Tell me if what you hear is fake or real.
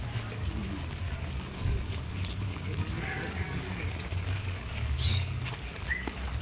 fake